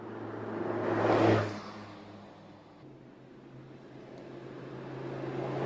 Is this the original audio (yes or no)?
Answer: yes